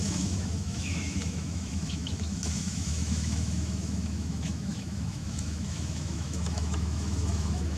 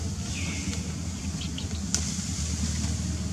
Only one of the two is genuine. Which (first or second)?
second